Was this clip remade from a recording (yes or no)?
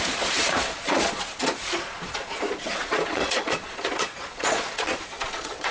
yes